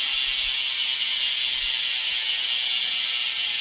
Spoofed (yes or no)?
no